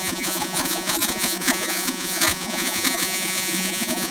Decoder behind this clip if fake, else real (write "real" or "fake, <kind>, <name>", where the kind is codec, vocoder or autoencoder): fake, vocoder, Vocos